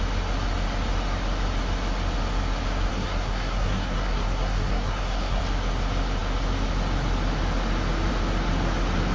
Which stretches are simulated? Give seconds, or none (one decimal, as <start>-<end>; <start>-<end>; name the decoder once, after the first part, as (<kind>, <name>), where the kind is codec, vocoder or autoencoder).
2.9-5.4 (codec, SNAC)